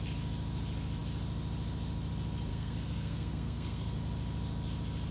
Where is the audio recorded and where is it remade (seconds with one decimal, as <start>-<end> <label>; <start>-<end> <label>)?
0.0-2.5 recorded; 2.5-4.0 remade; 4.0-5.1 recorded